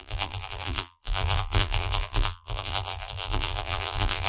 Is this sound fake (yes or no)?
yes